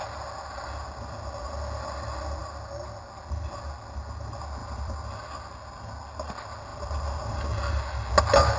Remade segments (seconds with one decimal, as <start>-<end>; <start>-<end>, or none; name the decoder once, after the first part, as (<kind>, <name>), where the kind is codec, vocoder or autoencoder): 4.6-5.1 (vocoder, BigVGAN v2)